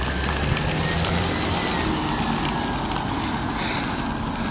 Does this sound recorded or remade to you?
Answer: recorded